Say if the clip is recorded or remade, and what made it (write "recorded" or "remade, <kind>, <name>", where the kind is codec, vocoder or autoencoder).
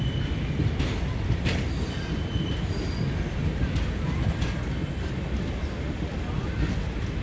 recorded